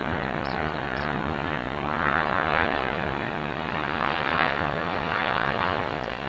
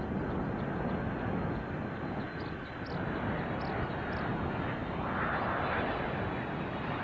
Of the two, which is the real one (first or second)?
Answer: second